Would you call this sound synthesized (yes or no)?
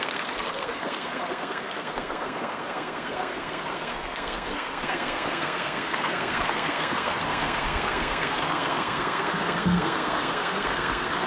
yes